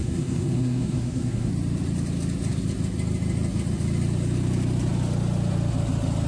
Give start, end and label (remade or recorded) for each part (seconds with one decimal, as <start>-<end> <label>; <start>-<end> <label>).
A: 0.0-1.5 remade; 1.5-6.3 recorded